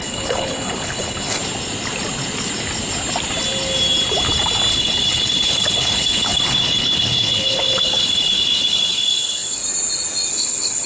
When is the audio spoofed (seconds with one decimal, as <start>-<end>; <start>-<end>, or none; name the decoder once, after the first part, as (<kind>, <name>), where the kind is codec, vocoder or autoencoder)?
0.0-1.4 (codec, HILCodec); 4.7-9.6; 10.3-10.9

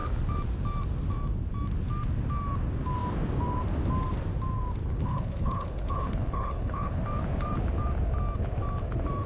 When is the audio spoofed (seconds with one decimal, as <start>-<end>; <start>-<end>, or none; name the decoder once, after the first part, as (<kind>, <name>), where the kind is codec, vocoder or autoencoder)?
4.8-7.0 (codec, HILCodec)

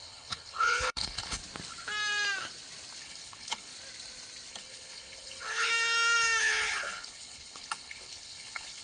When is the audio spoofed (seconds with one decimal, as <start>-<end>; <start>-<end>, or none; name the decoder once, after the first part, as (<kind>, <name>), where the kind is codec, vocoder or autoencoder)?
0.0-1.4 (codec, HILCodec); 3.0-3.7; 4.5-5.7; 6.4-8.8

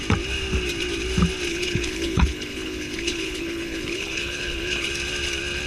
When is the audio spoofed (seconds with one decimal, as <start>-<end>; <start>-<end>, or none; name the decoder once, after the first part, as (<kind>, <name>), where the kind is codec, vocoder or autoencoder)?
1.5-4.9 (codec, HILCodec)

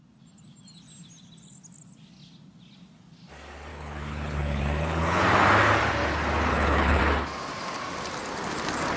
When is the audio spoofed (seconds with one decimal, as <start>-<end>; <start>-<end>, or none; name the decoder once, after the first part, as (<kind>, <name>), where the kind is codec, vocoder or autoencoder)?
3.7-5.2 (codec, HILCodec); 6.5-7.0

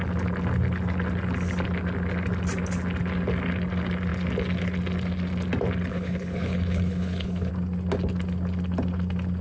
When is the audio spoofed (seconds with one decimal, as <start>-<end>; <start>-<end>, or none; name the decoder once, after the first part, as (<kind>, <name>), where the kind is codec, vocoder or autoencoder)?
5.9-7.5 (codec, HILCodec)